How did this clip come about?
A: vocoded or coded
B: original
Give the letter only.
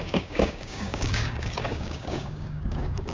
A